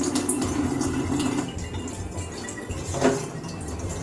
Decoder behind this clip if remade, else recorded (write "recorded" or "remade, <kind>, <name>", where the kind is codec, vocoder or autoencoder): recorded